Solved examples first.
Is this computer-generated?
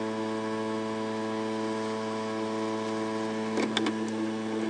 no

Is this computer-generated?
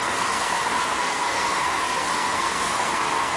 yes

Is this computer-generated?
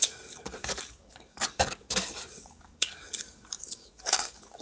yes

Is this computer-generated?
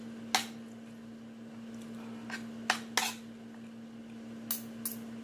no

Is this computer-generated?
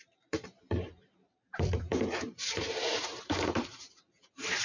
yes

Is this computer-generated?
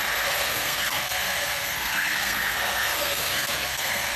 yes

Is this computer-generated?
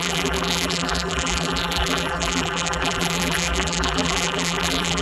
yes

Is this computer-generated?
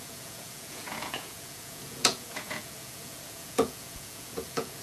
yes